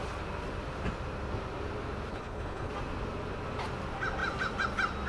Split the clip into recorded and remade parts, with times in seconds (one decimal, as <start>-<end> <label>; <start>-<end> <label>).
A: 0.0-2.1 recorded; 2.1-2.7 remade; 2.7-5.1 recorded